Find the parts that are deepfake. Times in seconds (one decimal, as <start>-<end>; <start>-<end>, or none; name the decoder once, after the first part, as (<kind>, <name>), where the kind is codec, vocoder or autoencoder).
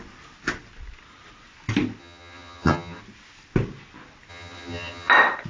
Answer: 2.0-3.0 (vocoder, HiFi-GAN); 4.3-5.1